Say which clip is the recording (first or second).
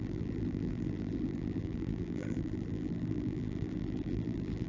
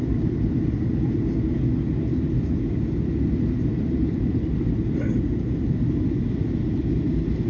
second